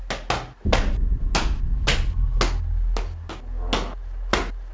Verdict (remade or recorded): recorded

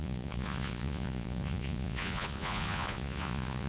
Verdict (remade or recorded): remade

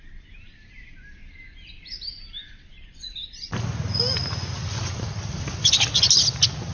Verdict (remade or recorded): recorded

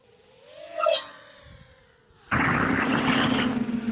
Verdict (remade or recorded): recorded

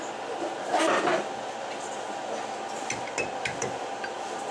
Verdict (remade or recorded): recorded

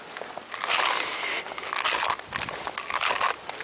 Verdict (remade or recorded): recorded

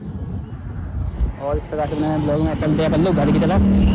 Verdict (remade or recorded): recorded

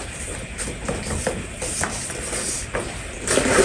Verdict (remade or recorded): recorded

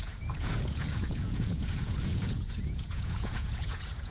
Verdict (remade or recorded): remade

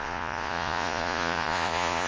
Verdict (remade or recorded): remade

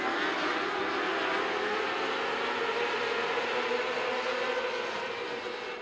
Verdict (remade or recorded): recorded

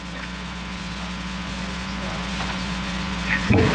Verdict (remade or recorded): remade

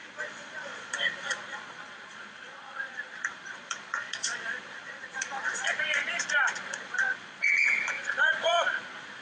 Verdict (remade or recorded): remade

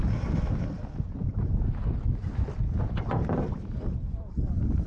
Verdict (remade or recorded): recorded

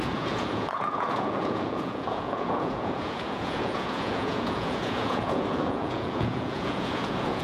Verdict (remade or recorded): remade